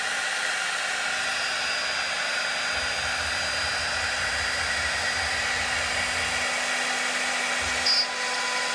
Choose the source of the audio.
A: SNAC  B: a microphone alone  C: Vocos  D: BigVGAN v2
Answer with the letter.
B